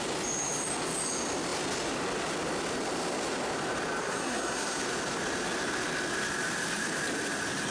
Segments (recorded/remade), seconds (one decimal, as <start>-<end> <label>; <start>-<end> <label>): 0.0-4.0 recorded; 4.0-4.8 remade; 4.8-7.7 recorded